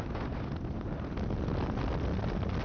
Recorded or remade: recorded